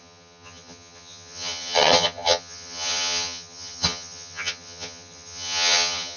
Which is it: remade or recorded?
remade